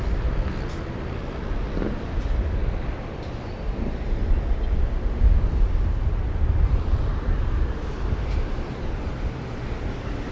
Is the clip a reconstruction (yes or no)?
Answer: no